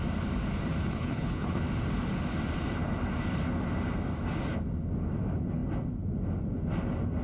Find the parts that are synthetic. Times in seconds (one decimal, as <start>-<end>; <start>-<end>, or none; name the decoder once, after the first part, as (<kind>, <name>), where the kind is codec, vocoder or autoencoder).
0.8-1.6 (codec, HILCodec)